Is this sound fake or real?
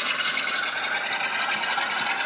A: real